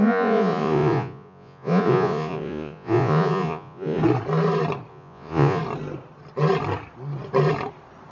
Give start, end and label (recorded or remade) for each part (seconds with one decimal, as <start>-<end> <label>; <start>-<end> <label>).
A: 0.0-4.0 remade; 4.0-4.9 recorded; 4.9-5.6 remade; 5.6-8.1 recorded